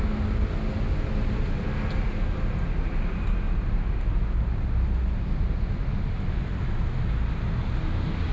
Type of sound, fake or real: real